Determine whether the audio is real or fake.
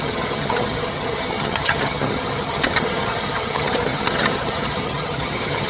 fake